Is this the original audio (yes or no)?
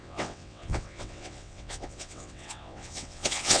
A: no